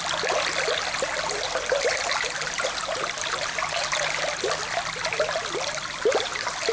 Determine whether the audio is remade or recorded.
recorded